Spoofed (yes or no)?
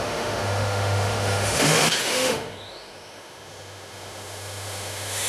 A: yes